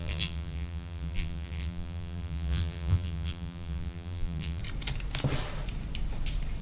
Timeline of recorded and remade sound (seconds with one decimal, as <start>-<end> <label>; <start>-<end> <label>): 0.0-4.6 remade; 4.6-6.6 recorded